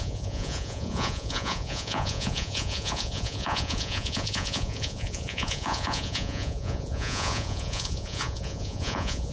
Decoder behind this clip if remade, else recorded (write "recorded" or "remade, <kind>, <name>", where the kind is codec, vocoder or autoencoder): remade, vocoder, Vocos